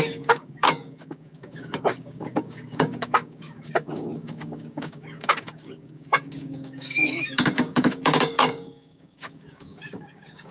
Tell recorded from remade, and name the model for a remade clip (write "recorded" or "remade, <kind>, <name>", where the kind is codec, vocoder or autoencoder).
remade, codec, DAC